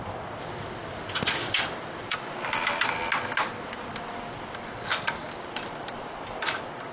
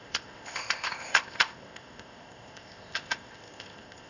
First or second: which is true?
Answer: first